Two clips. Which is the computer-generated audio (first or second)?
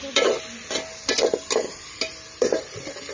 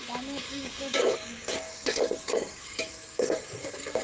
second